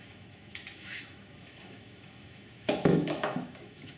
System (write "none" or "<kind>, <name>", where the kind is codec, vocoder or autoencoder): autoencoder, DAC-VAE